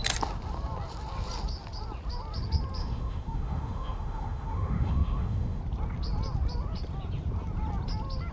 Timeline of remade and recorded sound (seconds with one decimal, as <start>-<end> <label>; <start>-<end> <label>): 0.0-2.8 recorded; 2.8-5.6 remade; 5.6-8.3 recorded